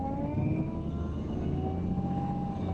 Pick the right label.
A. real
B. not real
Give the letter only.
A